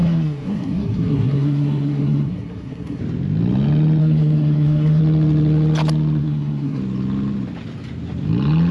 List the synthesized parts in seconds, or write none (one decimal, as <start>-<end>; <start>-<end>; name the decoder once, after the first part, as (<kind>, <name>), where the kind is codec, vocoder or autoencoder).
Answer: 0.0-3.0 (codec, SNAC); 4.0-5.0; 6.2-6.8